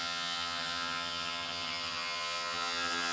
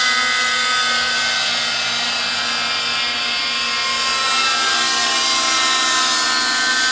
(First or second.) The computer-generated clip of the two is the first